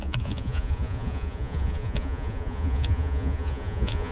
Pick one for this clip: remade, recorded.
remade